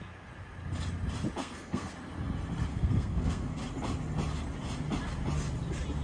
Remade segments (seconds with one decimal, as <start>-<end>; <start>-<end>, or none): 1.4-1.9; 2.7-3.6